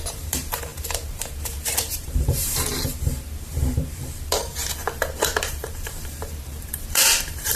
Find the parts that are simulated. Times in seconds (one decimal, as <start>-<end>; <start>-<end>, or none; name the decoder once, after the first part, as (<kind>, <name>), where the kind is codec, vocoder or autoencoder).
0.0-4.6 (vocoder, BigVGAN v2); 5.5-7.6